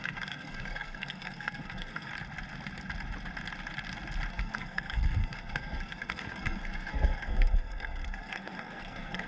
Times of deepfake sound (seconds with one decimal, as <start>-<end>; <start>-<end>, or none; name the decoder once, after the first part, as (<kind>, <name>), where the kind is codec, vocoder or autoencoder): 0.0-2.1 (codec, SNAC); 4.3-9.3